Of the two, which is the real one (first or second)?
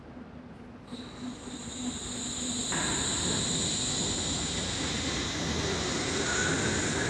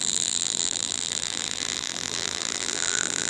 first